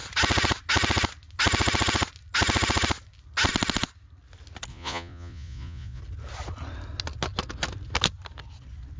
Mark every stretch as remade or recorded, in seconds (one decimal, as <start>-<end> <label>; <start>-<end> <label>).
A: 0.0-4.7 recorded; 4.7-6.0 remade; 6.0-9.0 recorded